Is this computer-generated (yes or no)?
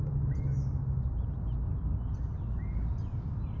no